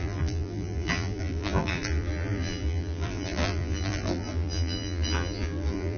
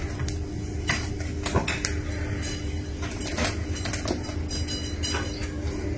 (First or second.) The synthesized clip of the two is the first